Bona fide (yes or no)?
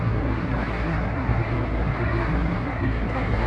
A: no